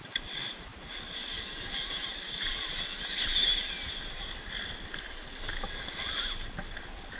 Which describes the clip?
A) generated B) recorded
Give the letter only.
B